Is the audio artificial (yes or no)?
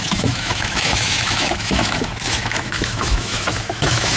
yes